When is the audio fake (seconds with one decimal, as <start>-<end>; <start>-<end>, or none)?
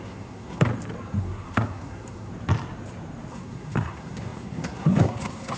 0.0-0.7; 1.2-2.3; 3.3-5.6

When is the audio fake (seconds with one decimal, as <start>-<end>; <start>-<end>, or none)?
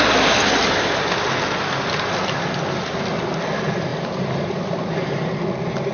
none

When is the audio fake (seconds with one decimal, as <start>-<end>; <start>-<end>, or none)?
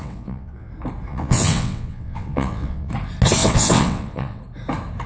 0.0-0.7; 1.1-2.9; 3.4-4.4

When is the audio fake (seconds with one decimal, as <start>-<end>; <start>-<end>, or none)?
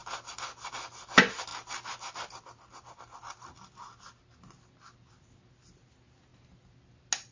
none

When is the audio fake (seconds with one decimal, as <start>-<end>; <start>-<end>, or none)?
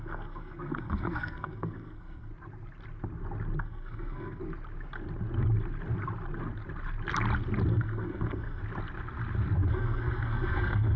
0.0-2.3; 3.6-4.4; 7.7-8.6; 9.7-11.0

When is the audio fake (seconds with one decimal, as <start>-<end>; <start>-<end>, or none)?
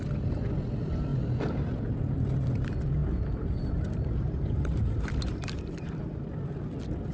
3.0-6.4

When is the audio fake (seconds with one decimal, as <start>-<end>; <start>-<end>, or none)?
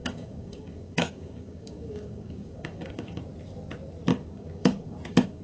0.0-3.2; 4.1-5.4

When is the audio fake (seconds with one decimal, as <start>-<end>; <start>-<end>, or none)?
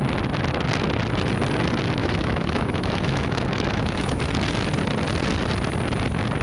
2.0-4.2